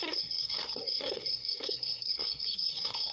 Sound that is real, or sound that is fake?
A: fake